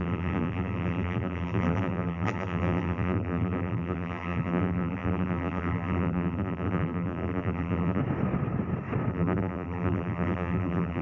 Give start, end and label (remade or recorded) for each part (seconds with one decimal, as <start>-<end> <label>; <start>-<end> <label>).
0.0-8.0 remade; 8.0-9.1 recorded; 9.1-11.0 remade